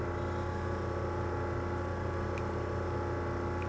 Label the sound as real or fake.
real